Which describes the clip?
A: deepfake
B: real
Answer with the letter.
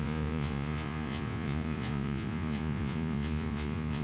A